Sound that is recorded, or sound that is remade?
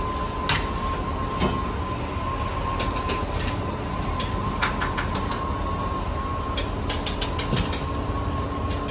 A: recorded